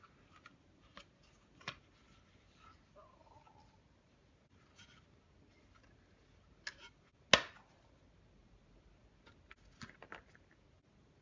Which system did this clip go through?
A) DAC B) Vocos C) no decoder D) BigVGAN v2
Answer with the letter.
C